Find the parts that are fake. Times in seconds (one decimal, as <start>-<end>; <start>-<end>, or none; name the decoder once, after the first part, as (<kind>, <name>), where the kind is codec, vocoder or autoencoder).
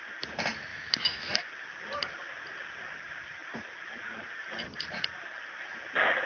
0.7-1.4 (autoencoder, DAC-VAE)